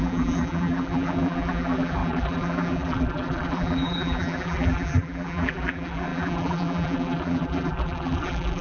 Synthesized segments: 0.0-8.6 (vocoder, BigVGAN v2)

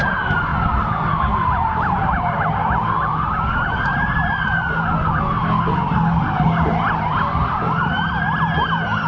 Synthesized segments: none

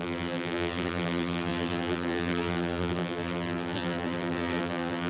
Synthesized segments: 0.0-5.1 (vocoder, BigVGAN v2)

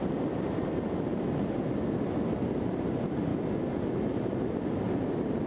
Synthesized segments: 0.0-1.1 (vocoder, BigVGAN v2); 1.6-3.3; 3.9-5.5

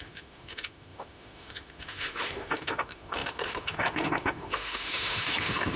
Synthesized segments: 0.0-5.8 (autoencoder, DAC-VAE)

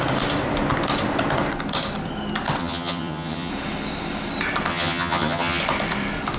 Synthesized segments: 2.6-3.5 (vocoder, HiFi-GAN); 4.7-5.6

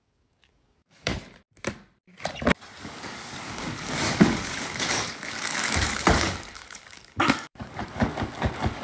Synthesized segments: 0.0-1.1 (codec, DAC); 2.8-8.8

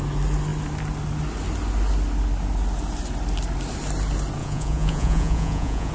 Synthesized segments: 4.4-5.9 (vocoder, Vocos)